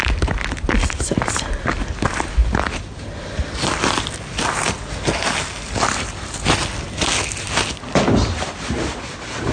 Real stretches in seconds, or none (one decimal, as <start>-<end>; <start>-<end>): 0.0-9.5